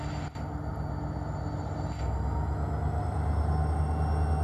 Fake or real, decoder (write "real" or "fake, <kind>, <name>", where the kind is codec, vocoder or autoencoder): real